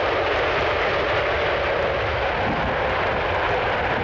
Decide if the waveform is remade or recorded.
recorded